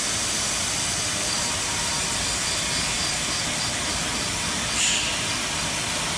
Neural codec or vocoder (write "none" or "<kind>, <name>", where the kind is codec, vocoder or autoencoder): none